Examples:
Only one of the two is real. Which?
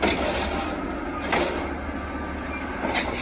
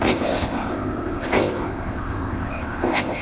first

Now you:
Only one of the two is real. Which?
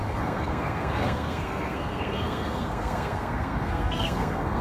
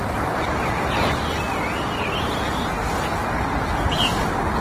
second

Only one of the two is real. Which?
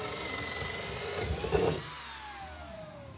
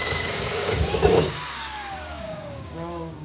first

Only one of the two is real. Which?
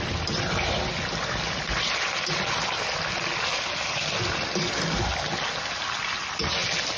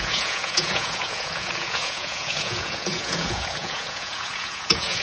first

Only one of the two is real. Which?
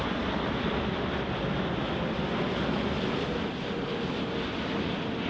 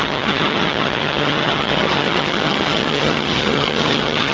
first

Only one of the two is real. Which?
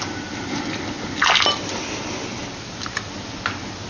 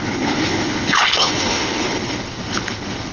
first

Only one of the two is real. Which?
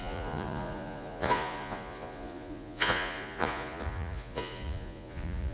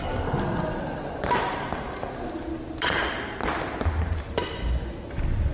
second